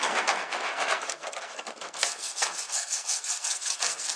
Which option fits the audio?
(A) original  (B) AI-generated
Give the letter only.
B